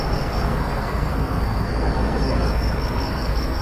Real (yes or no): no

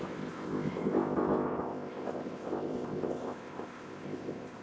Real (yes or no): no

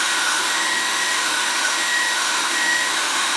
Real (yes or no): no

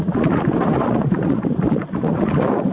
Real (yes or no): no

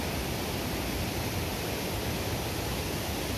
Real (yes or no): yes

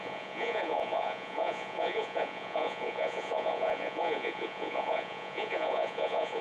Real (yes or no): no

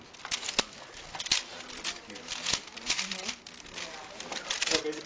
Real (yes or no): yes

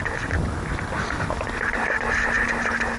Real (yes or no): yes